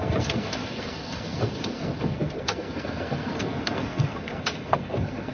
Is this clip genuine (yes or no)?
no